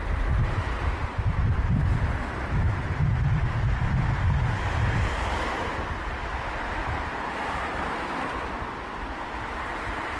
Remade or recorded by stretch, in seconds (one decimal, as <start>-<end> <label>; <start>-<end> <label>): 0.0-1.0 recorded; 1.0-4.8 remade; 4.8-10.2 recorded